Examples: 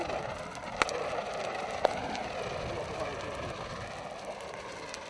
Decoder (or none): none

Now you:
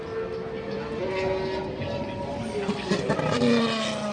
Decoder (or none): none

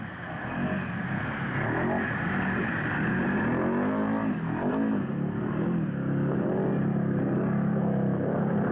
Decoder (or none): none